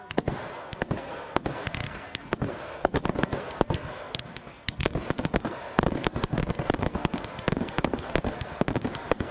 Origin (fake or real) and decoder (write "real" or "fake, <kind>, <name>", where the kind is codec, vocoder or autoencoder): fake, codec, SNAC